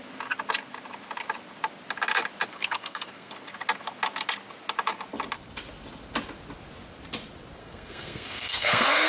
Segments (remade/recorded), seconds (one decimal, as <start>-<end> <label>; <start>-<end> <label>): 0.0-2.5 recorded; 2.5-3.3 remade; 3.3-7.6 recorded; 7.6-9.1 remade